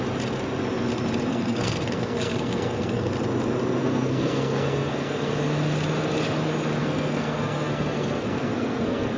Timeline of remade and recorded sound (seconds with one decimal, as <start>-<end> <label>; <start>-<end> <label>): 0.0-1.3 recorded; 1.3-3.1 remade; 3.1-3.8 recorded; 3.8-5.3 remade; 5.3-6.8 recorded; 6.8-9.2 remade